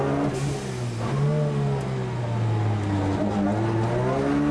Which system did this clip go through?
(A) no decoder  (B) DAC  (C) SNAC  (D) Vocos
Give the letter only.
A